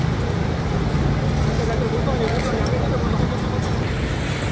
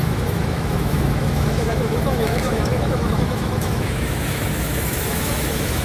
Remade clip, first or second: second